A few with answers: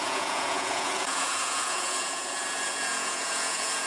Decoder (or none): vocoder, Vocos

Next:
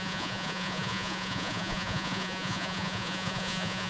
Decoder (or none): vocoder, Vocos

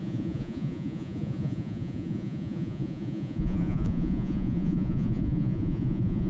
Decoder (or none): vocoder, Vocos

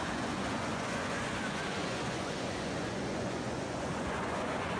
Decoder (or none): vocoder, Vocos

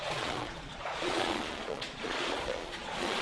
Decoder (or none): vocoder, Vocos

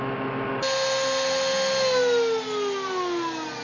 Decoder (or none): none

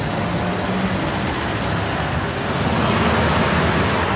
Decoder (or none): none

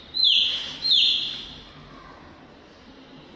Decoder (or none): none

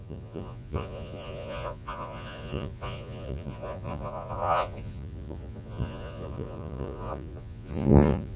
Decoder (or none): vocoder, Vocos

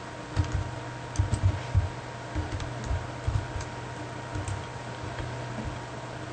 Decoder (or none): none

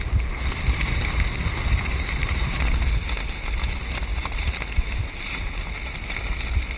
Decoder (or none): none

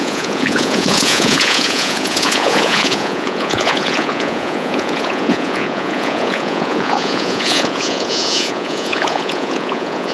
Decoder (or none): vocoder, Vocos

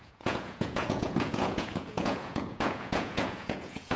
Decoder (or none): vocoder, Vocos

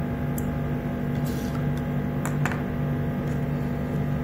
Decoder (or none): none